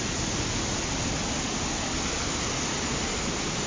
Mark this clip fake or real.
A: real